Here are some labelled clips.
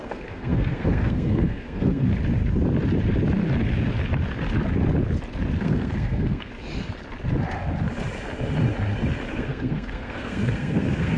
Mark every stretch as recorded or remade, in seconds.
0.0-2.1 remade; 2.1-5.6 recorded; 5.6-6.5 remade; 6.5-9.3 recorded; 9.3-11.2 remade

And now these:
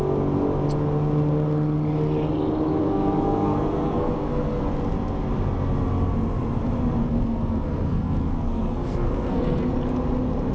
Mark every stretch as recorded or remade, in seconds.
0.0-2.8 recorded; 2.8-4.6 remade; 4.6-7.0 recorded; 7.0-9.7 remade; 9.7-10.5 recorded

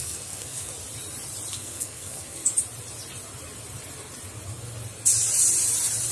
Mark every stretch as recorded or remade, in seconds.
0.0-0.7 remade; 0.7-1.5 recorded; 1.5-2.4 remade; 2.4-6.1 recorded